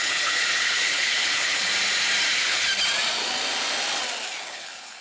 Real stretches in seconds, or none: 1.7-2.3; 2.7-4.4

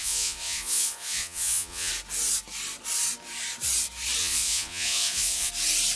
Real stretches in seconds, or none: 1.9-4.2; 5.5-6.0

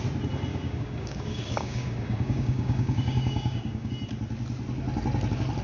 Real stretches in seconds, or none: 0.0-0.5; 3.9-5.6

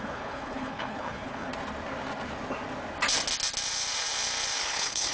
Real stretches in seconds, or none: 1.5-4.6

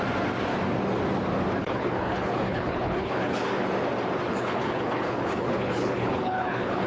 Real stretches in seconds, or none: 0.0-1.6; 3.5-4.3

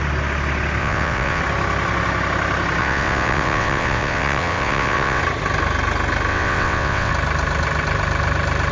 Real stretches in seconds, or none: 0.0-0.8; 1.4-2.8; 5.2-6.3; 7.1-8.7

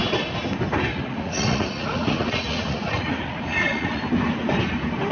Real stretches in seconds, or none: 0.0-0.9; 4.0-5.1

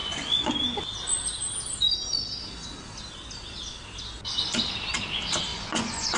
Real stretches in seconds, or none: 0.5-5.5